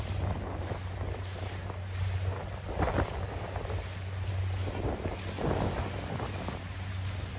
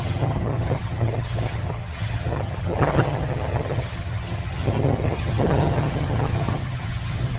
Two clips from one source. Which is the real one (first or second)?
first